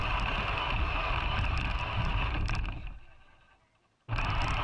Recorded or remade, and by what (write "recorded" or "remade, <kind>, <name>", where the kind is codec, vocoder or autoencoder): recorded